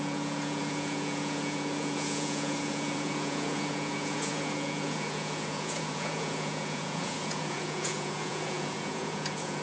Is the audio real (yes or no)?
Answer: no